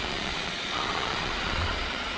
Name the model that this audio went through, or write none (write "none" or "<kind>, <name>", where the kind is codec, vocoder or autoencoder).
vocoder, Vocos